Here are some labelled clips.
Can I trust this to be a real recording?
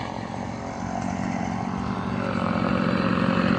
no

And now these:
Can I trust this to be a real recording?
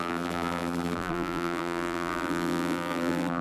no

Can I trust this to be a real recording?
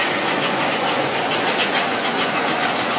no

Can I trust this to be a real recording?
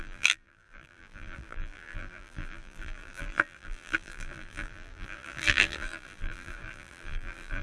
no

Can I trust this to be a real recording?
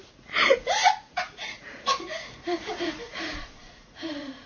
no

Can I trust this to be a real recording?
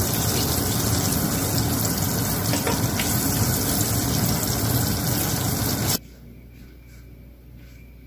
yes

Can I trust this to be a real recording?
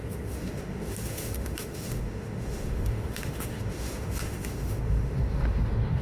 no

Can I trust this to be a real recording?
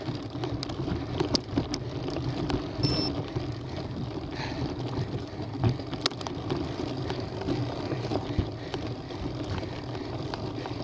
yes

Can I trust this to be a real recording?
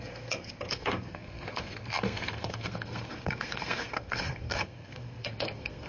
no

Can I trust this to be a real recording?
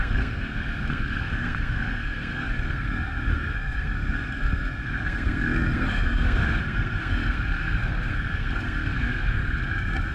no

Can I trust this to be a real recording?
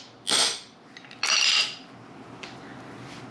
yes